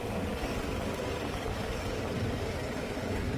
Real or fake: fake